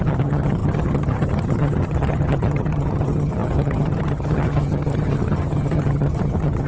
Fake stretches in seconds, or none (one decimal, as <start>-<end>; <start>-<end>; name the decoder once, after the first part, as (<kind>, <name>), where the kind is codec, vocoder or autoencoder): 0.0-6.7 (vocoder, HiFi-GAN)